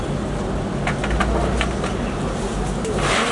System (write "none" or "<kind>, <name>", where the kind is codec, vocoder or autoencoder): none